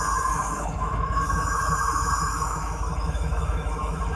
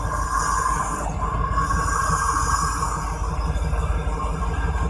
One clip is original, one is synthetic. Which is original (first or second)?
second